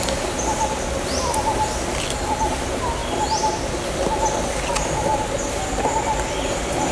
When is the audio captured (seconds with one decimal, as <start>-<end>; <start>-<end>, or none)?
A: 0.0-6.9